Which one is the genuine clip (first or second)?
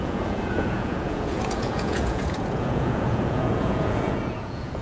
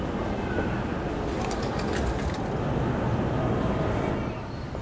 second